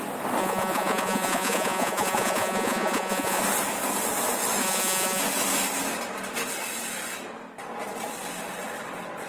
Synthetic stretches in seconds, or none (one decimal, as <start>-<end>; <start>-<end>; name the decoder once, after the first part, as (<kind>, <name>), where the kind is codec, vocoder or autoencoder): 0.4-3.4 (vocoder, Vocos); 4.6-5.2